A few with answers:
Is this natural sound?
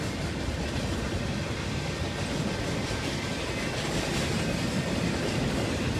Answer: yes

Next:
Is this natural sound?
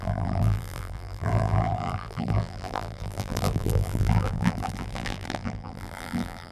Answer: no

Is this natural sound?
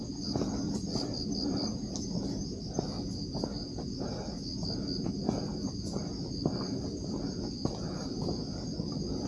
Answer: yes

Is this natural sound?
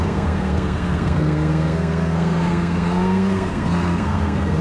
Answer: no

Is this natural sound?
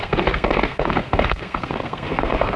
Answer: no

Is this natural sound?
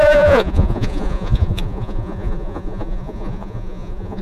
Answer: no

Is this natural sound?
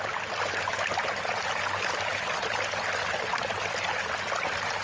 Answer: yes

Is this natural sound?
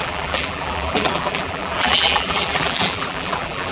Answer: no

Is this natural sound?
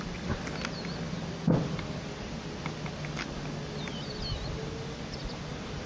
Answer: yes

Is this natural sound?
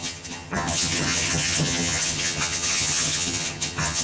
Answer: no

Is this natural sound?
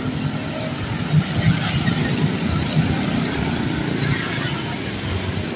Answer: yes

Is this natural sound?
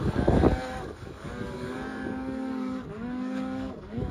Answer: no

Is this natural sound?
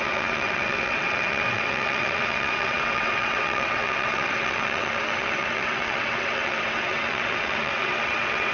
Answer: no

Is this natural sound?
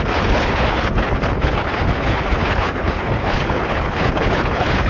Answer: no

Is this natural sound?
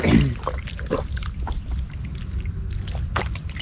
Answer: yes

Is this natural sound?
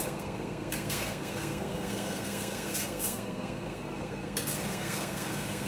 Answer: no